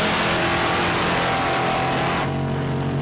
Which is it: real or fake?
real